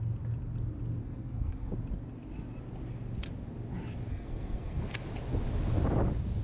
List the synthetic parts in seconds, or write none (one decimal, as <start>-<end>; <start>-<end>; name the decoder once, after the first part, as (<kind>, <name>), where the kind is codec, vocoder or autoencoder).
1.0-1.7 (codec, SNAC); 4.1-5.1